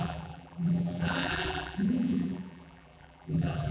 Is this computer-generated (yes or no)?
yes